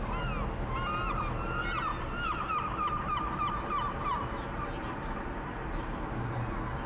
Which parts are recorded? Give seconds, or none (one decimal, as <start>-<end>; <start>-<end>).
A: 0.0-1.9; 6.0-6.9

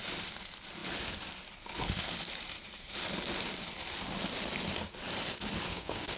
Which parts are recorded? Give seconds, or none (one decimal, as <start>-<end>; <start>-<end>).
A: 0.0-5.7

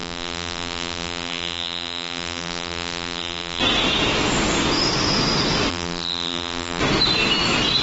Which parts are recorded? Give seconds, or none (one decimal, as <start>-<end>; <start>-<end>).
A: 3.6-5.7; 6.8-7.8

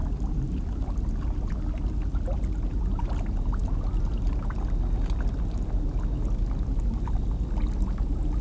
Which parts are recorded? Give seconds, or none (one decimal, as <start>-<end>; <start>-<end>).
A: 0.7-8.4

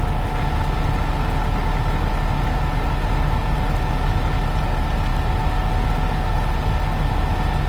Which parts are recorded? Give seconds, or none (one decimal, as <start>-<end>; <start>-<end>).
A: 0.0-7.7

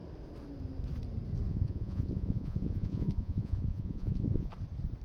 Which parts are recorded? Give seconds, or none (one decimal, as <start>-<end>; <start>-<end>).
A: 0.0-1.5; 4.5-5.0